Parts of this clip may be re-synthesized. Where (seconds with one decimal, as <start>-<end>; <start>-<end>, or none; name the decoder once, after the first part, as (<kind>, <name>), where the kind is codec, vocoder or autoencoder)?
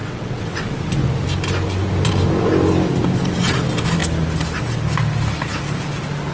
0.0-0.9 (vocoder, WaveNeXt)